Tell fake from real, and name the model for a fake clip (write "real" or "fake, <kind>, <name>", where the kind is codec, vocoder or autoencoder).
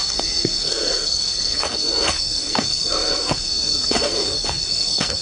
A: fake, codec, SNAC